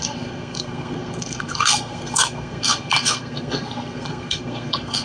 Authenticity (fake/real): fake